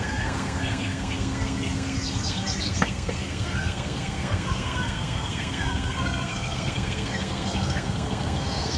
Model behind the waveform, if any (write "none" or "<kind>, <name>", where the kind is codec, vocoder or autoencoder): codec, SNAC